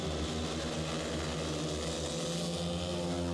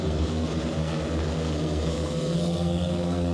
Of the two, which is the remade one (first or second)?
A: second